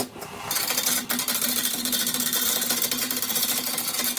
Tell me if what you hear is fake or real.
real